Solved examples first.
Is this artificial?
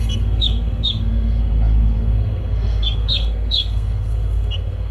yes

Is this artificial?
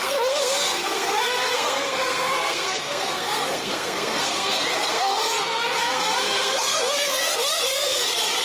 yes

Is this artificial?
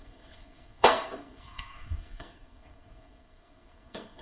yes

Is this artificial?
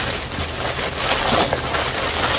no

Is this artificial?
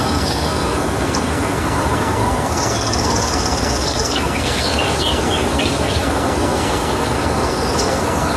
yes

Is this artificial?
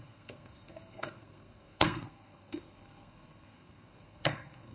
yes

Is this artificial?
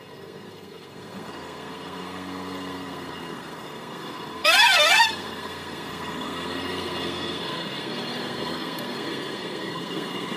yes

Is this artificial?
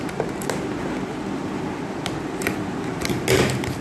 no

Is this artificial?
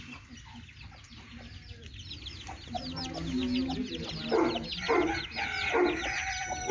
no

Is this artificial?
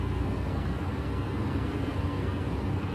yes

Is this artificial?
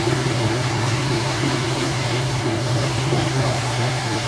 yes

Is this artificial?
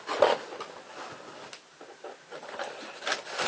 no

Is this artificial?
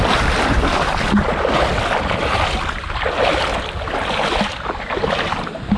no